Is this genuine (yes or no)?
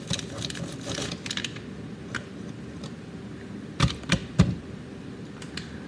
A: yes